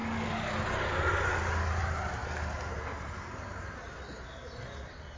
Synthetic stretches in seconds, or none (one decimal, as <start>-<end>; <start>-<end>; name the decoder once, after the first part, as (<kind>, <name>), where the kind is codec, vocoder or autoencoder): 1.8-3.8 (vocoder, BigVGAN v2)